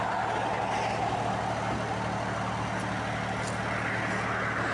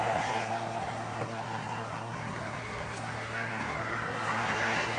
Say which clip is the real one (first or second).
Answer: first